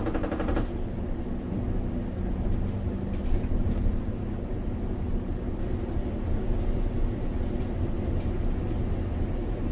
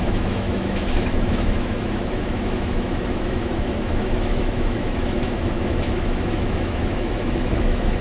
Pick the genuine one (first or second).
first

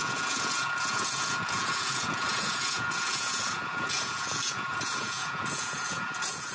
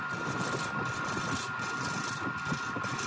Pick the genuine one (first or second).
second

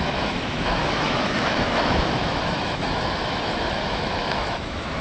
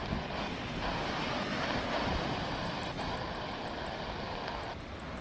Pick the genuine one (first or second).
second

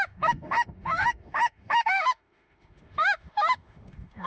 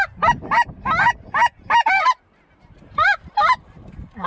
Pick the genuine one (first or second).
second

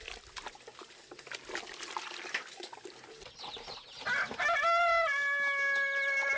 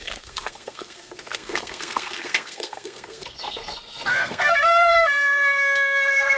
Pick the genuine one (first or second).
first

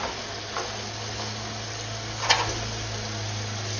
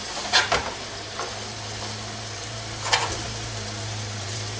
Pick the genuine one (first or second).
first